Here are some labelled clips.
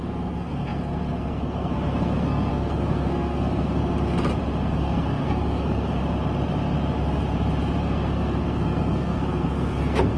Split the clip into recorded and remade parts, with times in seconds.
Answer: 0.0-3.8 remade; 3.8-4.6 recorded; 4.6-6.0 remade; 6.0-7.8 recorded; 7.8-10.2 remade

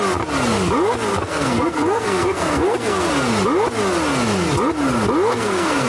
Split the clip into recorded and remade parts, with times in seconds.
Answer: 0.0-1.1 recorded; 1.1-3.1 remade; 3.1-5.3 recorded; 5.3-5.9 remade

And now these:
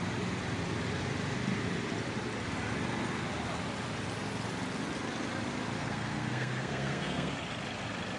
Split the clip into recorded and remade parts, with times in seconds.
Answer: 0.0-5.8 recorded; 5.8-7.3 remade; 7.3-8.2 recorded

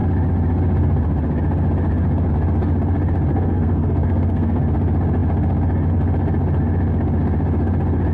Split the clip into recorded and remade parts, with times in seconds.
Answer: 0.0-3.3 recorded; 3.3-4.6 remade; 4.6-8.1 recorded

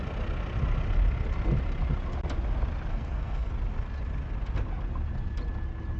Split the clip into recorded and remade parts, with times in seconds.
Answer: 0.0-2.9 recorded; 2.9-3.5 remade; 3.5-6.0 recorded

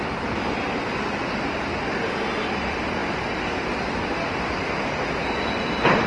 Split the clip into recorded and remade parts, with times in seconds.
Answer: 0.0-6.1 recorded

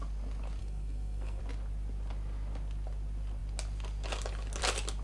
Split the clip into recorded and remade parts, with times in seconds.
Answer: 0.0-0.6 recorded; 0.6-1.4 remade; 1.4-5.0 recorded